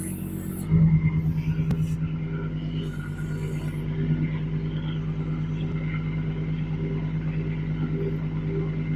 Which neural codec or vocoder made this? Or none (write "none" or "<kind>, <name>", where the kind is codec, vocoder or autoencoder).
none